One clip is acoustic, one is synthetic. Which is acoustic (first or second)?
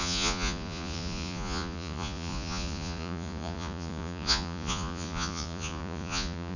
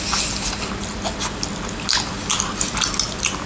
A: second